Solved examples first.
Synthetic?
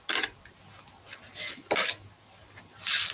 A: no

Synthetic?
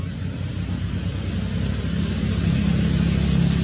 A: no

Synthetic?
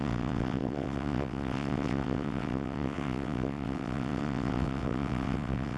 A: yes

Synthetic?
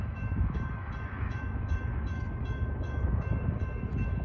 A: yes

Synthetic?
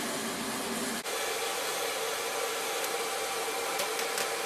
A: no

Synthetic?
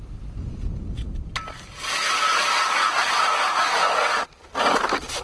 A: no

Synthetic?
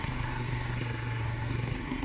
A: yes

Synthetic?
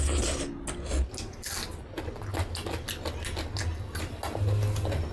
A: no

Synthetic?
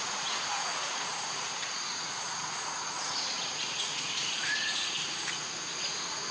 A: yes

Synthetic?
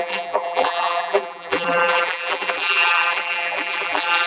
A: yes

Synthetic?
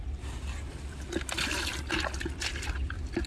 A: no